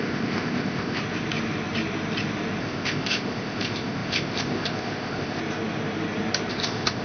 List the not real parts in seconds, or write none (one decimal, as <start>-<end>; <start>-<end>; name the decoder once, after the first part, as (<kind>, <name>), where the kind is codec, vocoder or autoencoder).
0.0-1.0 (codec, ZipCodec); 2.6-5.4; 6.5-7.0